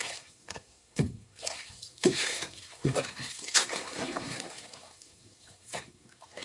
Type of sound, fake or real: fake